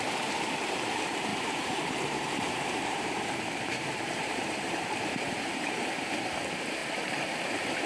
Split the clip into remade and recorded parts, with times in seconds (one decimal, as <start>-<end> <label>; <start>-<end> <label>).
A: 0.0-6.8 remade; 6.8-7.5 recorded; 7.5-7.9 remade